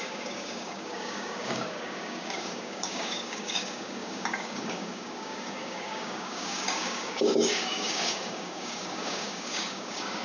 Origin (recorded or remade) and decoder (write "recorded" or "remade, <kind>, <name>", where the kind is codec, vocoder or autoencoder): remade, codec, DAC